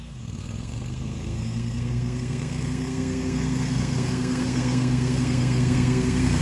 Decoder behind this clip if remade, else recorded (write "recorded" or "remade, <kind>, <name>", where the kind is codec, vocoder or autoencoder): remade, codec, SNAC